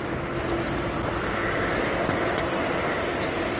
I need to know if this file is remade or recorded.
remade